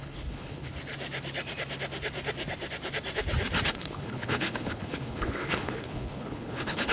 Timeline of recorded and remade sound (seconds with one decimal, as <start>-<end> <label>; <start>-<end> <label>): 0.0-0.7 remade; 0.7-3.7 recorded; 3.7-6.9 remade